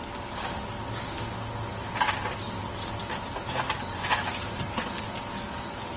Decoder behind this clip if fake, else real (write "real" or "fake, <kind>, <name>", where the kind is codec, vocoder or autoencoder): real